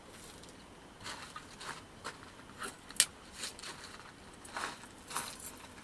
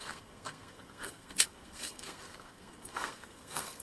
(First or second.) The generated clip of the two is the second